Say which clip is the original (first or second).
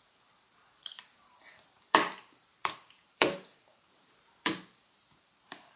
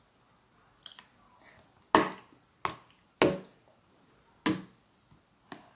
second